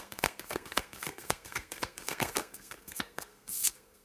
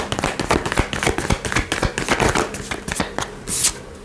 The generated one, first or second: first